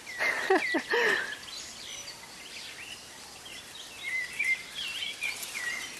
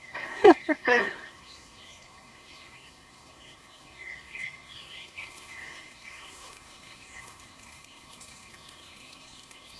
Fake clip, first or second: second